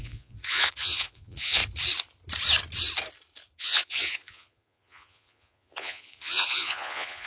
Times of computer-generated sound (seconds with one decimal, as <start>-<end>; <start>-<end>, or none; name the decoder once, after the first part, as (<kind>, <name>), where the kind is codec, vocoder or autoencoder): 0.0-1.6 (vocoder, Vocos); 3.6-7.3